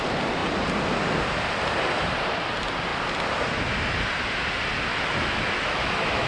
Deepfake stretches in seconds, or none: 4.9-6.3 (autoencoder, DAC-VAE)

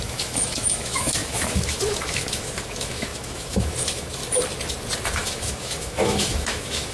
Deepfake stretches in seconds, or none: 0.0-4.2 (autoencoder, DAC-VAE); 5.1-6.9

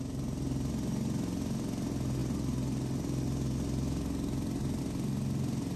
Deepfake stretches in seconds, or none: none